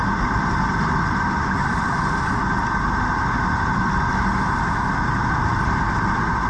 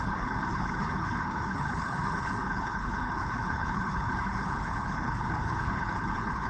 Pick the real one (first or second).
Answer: first